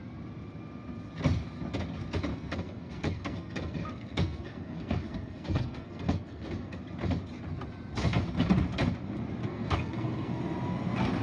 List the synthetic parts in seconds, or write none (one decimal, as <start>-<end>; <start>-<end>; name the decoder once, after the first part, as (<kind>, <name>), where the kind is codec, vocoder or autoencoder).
2.3-6.8 (codec, SNAC); 9.4-10.4